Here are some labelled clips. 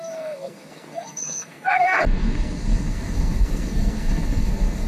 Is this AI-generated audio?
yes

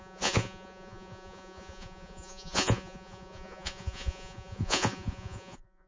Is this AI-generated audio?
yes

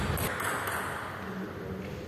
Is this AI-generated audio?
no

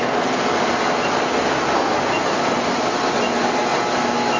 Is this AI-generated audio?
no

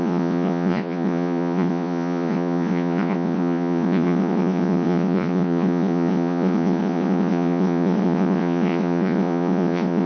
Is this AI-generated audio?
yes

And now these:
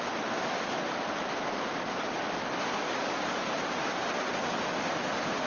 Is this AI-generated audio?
no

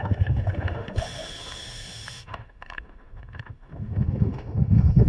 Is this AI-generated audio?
yes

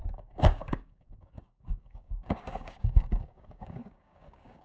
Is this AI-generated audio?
yes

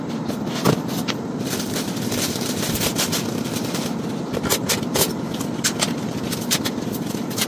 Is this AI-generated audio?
yes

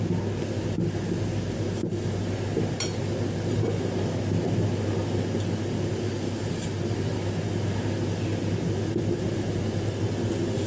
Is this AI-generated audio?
no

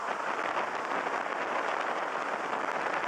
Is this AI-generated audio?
no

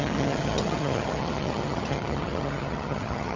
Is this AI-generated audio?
yes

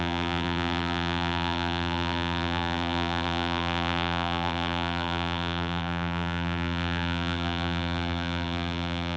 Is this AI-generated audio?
yes